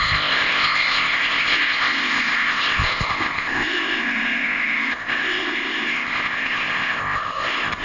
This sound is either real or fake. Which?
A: fake